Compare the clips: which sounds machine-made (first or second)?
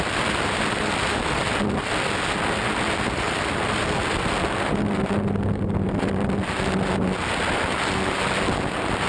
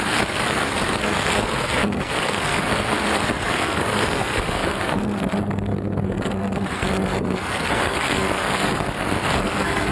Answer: second